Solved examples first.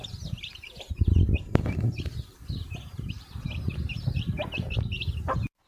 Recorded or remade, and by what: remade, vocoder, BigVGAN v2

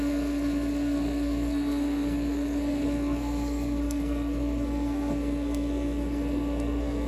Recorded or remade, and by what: remade, codec, SNAC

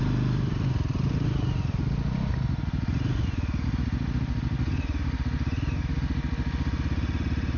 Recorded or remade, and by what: recorded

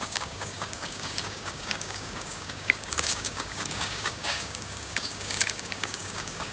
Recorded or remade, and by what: remade, codec, DAC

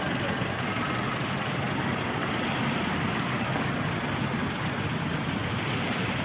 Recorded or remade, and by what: recorded